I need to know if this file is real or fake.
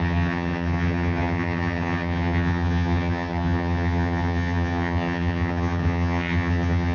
fake